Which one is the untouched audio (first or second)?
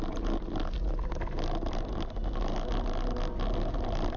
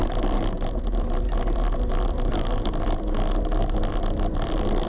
first